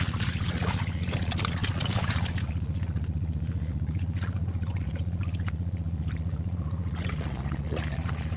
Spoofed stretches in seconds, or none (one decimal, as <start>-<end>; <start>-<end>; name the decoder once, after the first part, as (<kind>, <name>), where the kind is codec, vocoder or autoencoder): 0.0-8.4 (vocoder, Vocos)